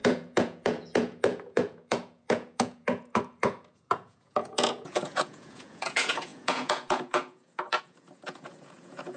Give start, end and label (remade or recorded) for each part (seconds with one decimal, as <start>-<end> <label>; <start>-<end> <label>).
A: 0.0-9.2 remade